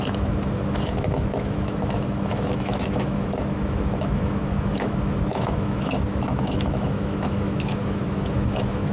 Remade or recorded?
remade